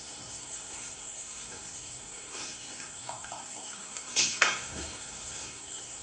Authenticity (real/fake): fake